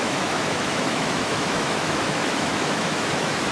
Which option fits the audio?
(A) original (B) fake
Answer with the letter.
B